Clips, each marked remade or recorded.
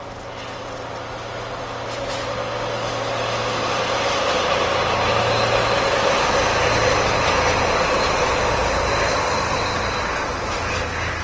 recorded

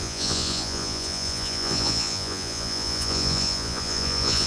remade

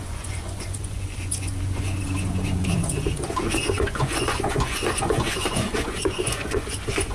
remade